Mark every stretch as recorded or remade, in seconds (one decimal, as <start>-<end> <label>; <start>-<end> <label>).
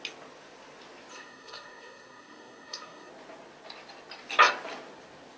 0.0-1.1 recorded; 1.1-3.1 remade; 3.1-5.4 recorded